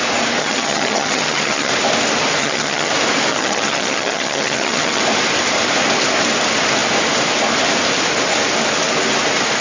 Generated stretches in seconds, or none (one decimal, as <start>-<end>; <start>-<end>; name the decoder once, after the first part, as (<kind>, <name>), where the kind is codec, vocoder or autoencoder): 0.4-1.7 (vocoder, HiFi-GAN); 2.4-2.9; 3.3-5.0